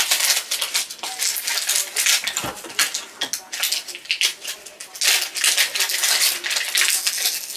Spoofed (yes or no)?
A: no